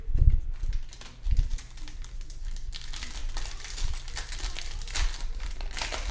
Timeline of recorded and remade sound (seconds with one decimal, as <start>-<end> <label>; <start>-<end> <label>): 0.0-6.1 remade